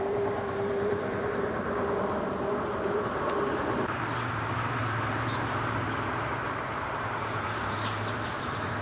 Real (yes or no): no